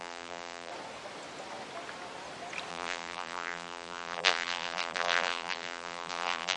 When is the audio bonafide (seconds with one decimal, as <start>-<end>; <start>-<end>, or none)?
0.7-2.7